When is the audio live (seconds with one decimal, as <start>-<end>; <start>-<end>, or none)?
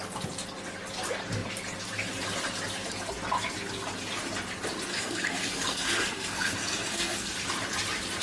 0.0-4.9; 7.3-8.2